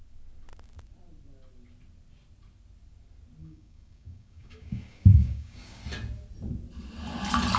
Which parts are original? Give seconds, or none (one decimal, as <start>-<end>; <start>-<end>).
0.0-3.4; 5.8-7.6